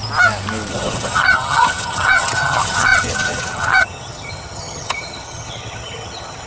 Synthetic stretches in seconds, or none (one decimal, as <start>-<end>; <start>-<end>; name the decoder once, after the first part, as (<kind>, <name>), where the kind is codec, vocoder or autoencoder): 0.7-6.5 (vocoder, HiFi-GAN)